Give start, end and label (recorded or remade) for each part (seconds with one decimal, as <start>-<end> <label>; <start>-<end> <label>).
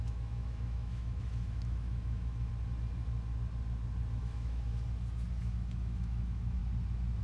0.0-2.5 remade; 2.5-4.2 recorded; 4.2-4.7 remade; 4.7-5.4 recorded; 5.4-6.6 remade; 6.6-7.2 recorded